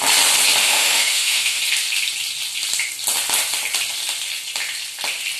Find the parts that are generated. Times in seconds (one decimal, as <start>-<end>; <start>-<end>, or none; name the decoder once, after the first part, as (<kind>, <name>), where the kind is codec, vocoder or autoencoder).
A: 0.6-1.6 (autoencoder, DAC-VAE)